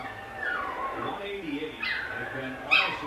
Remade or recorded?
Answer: recorded